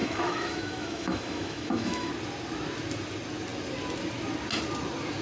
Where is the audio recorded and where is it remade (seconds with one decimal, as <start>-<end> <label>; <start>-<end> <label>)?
0.0-2.1 remade; 2.1-5.2 recorded

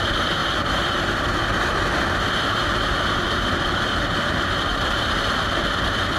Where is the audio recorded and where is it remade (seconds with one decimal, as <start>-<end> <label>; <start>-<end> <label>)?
0.0-0.4 recorded; 0.4-2.0 remade; 2.0-2.6 recorded; 2.6-3.8 remade; 3.8-4.7 recorded; 4.7-5.5 remade; 5.5-6.2 recorded

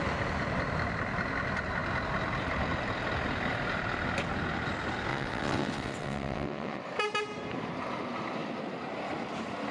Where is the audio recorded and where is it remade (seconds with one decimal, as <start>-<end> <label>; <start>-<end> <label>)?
0.0-5.1 recorded; 5.1-6.8 remade; 6.8-9.7 recorded